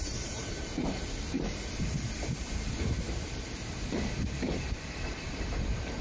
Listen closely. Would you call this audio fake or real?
fake